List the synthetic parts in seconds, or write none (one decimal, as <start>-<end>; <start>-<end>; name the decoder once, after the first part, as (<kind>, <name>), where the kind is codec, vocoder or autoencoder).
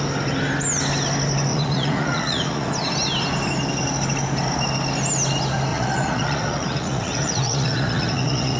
1.5-2.7 (vocoder, Vocos); 5.7-8.6